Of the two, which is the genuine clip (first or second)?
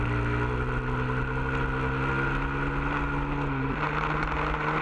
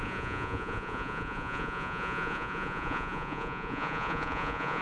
first